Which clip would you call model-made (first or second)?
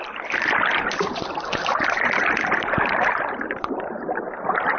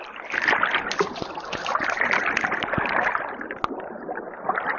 first